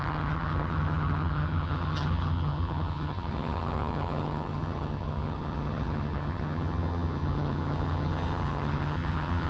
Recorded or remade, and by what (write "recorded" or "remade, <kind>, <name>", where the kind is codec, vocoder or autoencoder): remade, vocoder, HiFi-GAN